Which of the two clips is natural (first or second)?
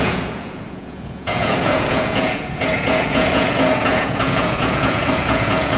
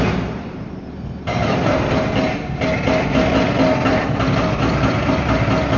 second